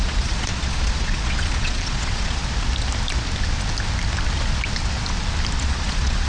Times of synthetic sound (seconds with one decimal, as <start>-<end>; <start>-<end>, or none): 0.0-2.4; 5.6-6.3